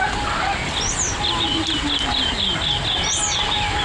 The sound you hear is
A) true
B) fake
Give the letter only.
A